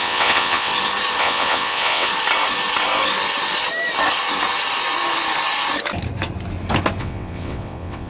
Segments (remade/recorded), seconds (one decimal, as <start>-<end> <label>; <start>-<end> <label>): 0.0-0.7 remade; 0.7-1.2 recorded; 1.2-2.1 remade; 2.1-7.0 recorded; 7.0-8.1 remade